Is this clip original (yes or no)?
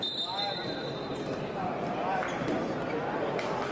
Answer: no